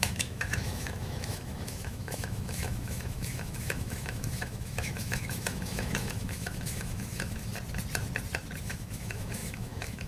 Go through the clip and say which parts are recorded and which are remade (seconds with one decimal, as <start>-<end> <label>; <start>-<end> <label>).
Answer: 0.0-7.5 remade; 7.5-8.6 recorded; 8.6-10.1 remade